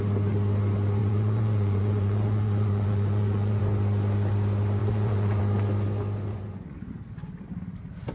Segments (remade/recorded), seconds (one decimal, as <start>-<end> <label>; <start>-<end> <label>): 0.0-1.0 recorded; 1.0-3.6 remade; 3.6-4.8 recorded; 4.8-5.4 remade; 5.4-6.3 recorded; 6.3-6.9 remade; 6.9-8.1 recorded